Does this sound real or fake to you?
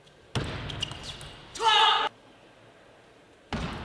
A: real